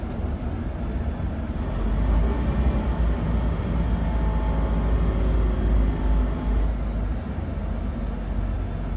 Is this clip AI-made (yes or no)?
no